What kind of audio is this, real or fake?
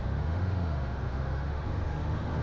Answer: fake